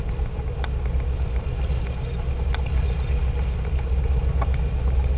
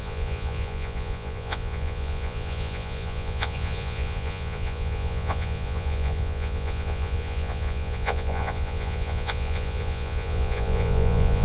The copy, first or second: second